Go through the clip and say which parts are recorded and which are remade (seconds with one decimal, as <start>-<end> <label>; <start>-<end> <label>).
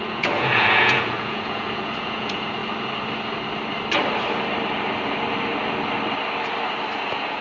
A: 0.0-2.6 remade; 2.6-7.0 recorded; 7.0-7.4 remade